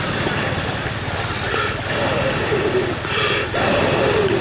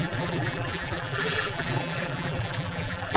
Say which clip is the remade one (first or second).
second